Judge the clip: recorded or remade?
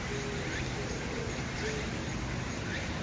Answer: recorded